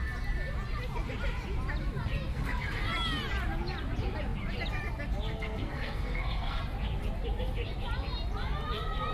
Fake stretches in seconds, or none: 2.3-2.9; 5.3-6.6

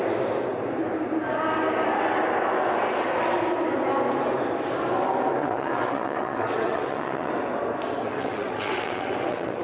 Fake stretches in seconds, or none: 5.4-7.3; 8.1-9.6

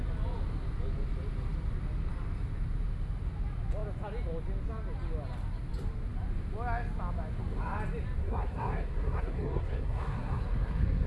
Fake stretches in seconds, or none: 8.2-11.1

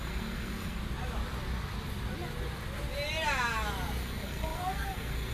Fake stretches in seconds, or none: 0.0-0.8; 4.0-5.3

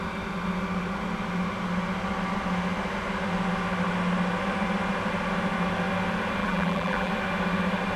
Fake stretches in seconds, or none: 6.4-7.1

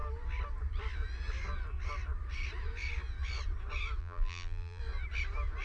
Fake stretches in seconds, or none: 4.0-4.8